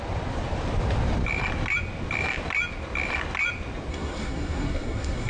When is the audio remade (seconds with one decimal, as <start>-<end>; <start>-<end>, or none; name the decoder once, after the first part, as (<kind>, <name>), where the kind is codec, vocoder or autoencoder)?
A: 3.9-5.3 (codec, SNAC)